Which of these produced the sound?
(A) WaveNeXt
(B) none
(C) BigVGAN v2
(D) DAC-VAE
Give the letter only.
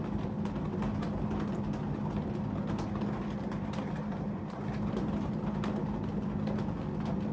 B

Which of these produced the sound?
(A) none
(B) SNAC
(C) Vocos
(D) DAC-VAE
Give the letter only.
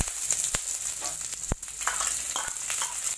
A